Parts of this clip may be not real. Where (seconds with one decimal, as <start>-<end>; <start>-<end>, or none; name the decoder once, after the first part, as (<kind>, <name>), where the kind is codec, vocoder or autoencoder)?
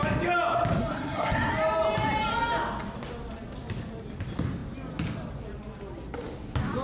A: 0.8-1.5 (codec, SNAC)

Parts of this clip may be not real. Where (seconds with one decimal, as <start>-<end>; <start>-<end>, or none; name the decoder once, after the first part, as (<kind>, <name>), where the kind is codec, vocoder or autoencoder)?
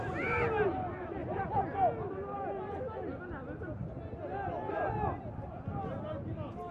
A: none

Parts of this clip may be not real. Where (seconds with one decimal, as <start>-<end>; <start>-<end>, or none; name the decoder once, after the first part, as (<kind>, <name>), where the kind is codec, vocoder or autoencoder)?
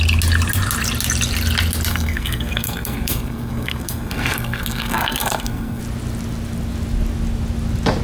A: 1.9-5.8 (codec, SNAC)